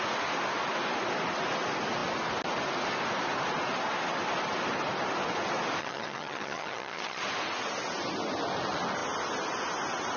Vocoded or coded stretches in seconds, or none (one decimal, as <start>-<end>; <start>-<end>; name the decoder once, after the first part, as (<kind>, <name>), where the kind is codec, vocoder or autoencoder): 5.8-7.2 (vocoder, HiFi-GAN)